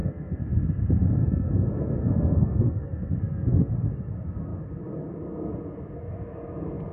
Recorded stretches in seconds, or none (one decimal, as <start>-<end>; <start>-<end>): 0.6-1.2; 3.9-6.9